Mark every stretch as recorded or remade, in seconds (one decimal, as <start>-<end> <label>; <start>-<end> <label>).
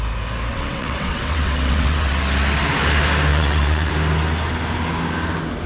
0.0-0.5 recorded; 0.5-2.2 remade; 2.2-3.3 recorded; 3.3-3.9 remade; 3.9-5.7 recorded